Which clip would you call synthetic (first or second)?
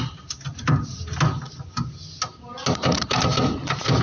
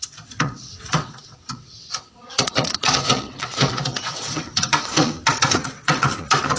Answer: second